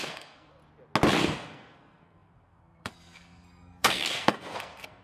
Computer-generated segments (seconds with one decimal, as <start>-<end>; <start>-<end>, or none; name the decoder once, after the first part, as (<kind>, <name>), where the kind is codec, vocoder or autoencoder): 0.0-0.6 (codec, SNAC); 1.2-5.0